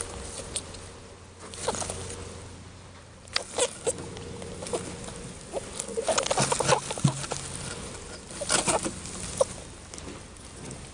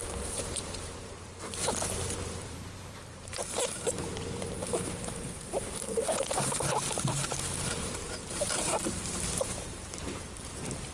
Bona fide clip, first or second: first